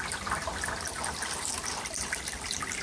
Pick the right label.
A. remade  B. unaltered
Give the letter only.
B